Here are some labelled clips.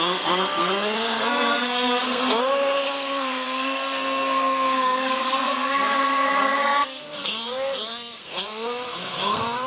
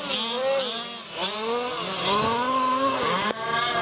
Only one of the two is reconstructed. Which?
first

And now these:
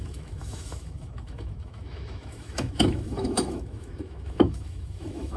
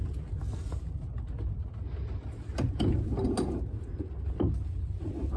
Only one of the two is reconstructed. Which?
first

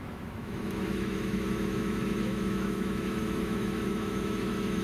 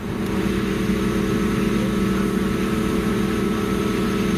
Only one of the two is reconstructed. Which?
first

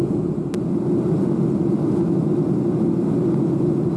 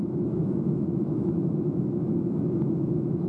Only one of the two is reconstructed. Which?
second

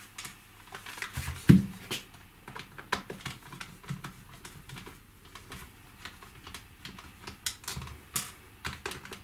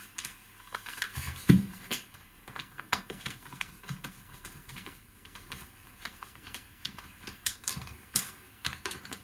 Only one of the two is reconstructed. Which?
second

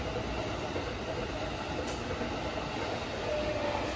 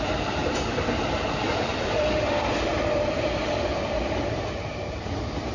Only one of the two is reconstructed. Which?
second